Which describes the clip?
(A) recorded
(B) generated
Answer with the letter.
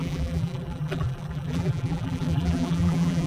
B